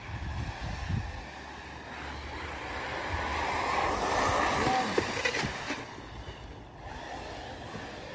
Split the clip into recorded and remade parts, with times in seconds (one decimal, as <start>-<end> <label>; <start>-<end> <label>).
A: 0.0-8.1 recorded